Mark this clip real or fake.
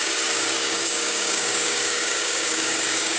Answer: fake